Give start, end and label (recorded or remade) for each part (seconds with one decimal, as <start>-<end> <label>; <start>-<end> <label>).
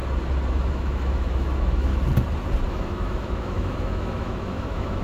0.0-0.7 recorded; 0.7-1.9 remade; 1.9-2.7 recorded; 2.7-5.0 remade